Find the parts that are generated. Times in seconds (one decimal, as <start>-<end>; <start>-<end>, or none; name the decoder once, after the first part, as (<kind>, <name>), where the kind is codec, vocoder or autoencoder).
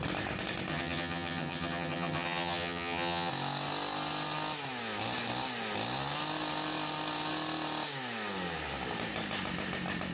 0.7-3.3 (vocoder, HiFi-GAN)